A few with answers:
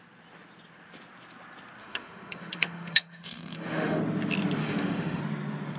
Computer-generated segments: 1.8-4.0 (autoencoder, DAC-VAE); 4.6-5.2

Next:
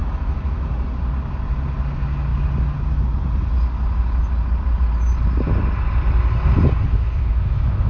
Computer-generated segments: 0.0-0.7 (autoencoder, DAC-VAE); 6.9-7.9